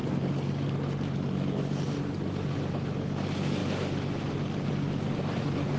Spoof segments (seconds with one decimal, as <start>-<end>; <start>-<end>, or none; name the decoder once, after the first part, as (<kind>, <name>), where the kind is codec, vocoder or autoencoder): none